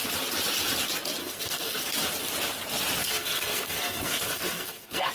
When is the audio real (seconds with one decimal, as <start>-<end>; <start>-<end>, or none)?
0.0-1.2; 1.8-3.0